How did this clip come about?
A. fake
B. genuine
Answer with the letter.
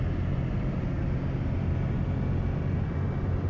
B